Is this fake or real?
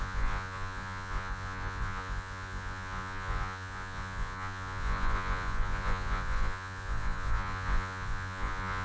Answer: fake